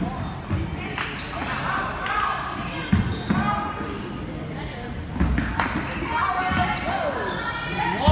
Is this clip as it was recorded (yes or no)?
yes